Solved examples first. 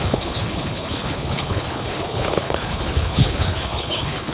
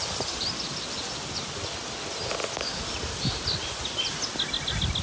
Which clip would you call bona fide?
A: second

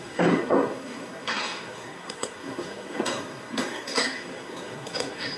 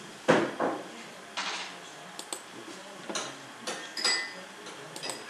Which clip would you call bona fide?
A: second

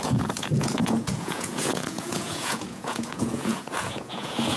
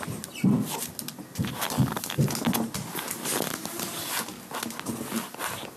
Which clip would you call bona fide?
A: second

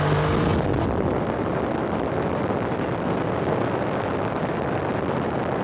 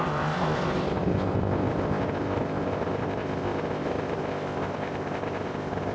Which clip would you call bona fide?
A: first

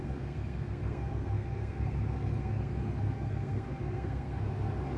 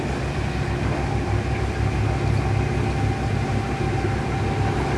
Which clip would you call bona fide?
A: second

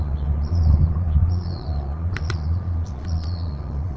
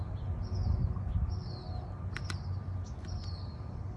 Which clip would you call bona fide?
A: second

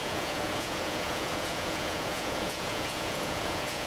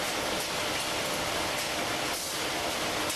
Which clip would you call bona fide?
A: second